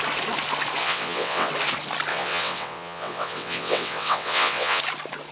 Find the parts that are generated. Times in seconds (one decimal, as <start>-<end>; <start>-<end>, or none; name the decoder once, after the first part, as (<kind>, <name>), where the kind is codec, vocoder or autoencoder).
0.8-1.5 (vocoder, WaveNeXt); 2.1-4.8